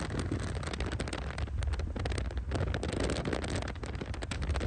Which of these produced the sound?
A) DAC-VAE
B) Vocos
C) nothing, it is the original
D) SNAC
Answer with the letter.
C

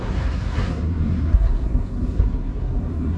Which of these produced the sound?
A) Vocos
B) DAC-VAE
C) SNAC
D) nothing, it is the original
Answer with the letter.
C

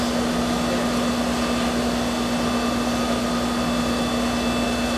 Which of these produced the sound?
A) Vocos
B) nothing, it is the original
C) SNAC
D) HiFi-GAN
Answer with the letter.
B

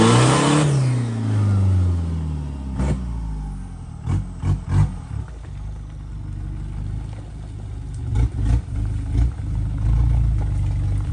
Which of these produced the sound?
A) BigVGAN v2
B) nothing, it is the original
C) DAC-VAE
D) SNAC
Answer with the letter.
B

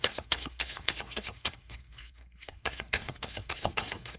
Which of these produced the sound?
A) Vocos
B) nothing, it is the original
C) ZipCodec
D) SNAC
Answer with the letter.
D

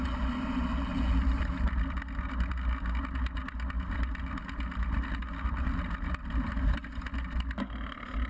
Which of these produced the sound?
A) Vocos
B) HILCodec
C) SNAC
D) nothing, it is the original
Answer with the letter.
D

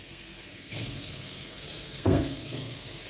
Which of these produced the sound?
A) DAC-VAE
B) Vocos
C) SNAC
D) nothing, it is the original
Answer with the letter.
C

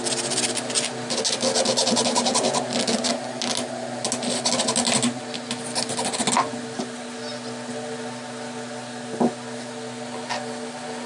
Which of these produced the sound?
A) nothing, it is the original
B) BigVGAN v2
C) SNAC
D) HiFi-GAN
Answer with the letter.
A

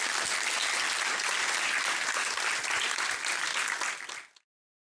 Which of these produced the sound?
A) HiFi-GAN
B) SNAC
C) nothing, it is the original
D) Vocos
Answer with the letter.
C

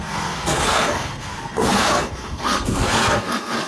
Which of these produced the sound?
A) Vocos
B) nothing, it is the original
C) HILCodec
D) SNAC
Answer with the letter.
D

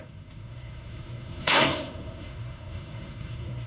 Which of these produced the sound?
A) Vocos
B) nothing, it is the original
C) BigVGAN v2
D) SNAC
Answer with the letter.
D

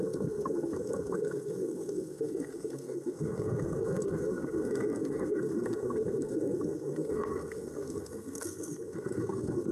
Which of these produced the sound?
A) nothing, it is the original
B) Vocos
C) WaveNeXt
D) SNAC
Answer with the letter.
D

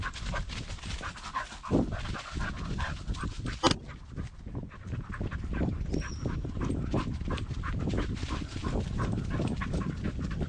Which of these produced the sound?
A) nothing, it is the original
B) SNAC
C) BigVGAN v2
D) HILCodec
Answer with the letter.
A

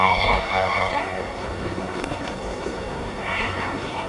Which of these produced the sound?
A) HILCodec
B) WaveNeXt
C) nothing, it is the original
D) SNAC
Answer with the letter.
D